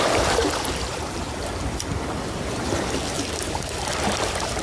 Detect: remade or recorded remade